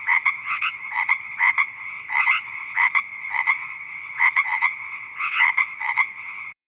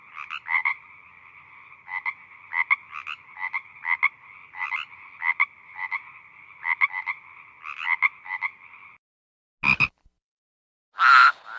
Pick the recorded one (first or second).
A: second